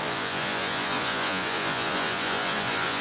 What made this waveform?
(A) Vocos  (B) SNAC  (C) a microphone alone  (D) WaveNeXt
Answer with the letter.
A